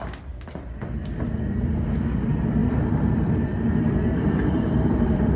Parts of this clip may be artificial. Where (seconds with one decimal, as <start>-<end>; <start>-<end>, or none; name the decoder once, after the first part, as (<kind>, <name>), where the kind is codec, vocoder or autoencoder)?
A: 2.6-5.4 (vocoder, BigVGAN v2)